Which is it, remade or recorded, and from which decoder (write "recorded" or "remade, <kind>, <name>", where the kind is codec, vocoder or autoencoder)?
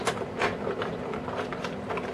recorded